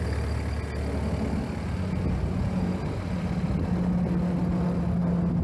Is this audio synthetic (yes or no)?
no